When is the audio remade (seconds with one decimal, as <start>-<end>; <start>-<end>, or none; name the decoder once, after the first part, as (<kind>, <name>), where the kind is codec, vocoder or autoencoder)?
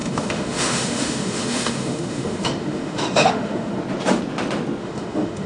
0.0-3.8 (autoencoder, DAC-VAE); 4.8-5.5